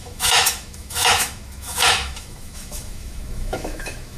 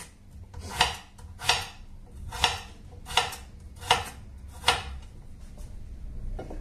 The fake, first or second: first